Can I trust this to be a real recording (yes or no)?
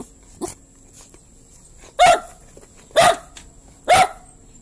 yes